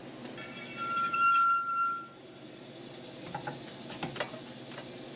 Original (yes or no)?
yes